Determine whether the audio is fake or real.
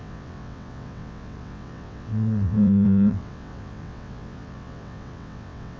fake